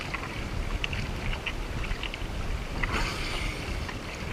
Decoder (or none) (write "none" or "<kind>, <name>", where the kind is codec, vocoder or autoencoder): none